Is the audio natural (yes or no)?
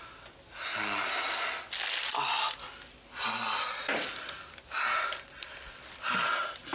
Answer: yes